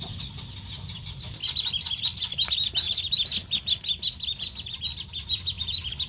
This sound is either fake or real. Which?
real